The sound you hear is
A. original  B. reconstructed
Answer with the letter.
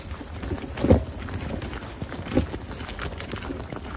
A